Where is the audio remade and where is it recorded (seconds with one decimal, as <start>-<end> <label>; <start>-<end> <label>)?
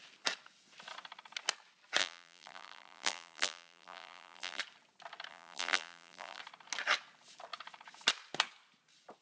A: 0.0-2.0 recorded; 2.0-4.6 remade; 4.6-5.3 recorded; 5.3-6.4 remade; 6.4-9.2 recorded